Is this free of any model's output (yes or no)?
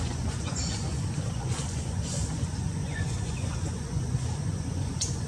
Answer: no